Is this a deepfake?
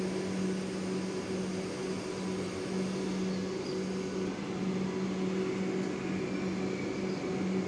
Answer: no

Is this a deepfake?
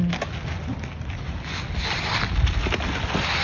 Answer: no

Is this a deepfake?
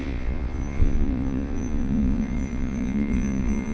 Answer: yes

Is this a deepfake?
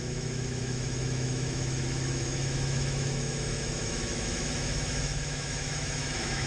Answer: yes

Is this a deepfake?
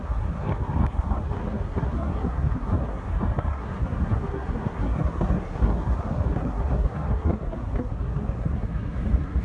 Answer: yes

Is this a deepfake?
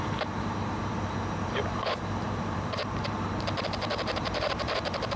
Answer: yes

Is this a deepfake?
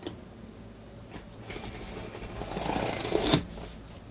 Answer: no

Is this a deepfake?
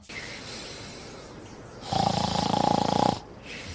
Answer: no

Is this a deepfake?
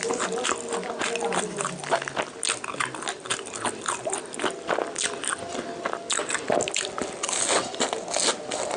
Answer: no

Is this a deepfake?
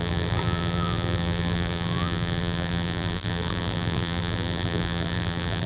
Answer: yes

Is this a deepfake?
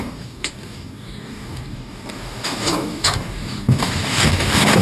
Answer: yes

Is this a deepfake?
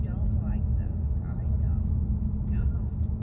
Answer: no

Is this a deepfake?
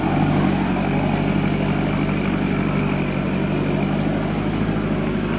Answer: no